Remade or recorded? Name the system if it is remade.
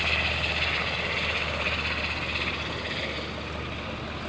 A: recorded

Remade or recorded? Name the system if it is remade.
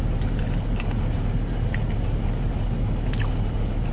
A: recorded